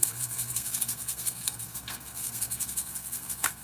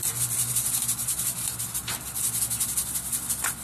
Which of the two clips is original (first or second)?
second